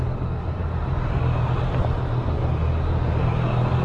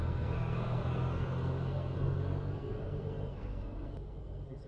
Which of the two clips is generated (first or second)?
second